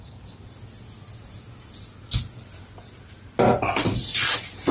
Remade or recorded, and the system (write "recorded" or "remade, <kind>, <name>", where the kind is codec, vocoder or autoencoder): recorded